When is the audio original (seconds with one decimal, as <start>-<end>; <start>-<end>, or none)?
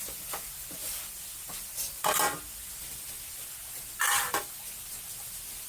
0.0-5.7